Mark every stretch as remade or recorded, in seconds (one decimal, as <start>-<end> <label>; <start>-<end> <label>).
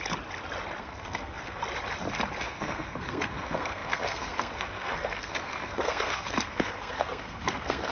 0.0-0.8 recorded; 0.8-1.6 remade; 1.6-2.4 recorded; 2.4-7.9 remade